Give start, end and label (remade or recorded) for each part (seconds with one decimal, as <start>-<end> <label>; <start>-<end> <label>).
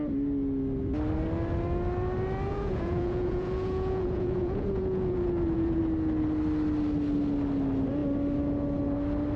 0.0-2.5 recorded; 2.5-5.8 remade; 5.8-9.4 recorded